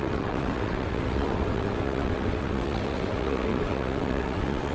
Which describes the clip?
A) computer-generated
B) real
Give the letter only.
A